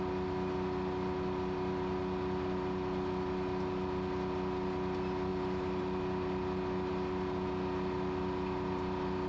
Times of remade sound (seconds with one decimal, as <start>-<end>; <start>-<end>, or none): none